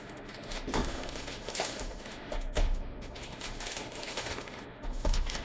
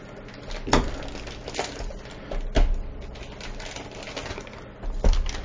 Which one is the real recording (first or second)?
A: second